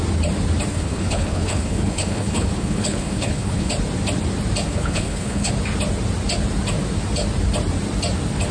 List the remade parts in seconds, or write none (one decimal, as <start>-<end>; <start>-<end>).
0.7-3.7; 4.7-5.5